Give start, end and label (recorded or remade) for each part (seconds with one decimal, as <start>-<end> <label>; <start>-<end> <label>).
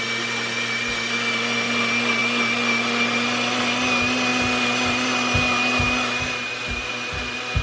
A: 0.0-7.6 recorded